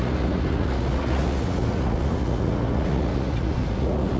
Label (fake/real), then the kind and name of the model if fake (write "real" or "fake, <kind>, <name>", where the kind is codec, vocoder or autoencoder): fake, vocoder, Vocos